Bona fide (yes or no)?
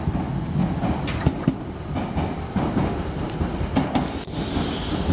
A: yes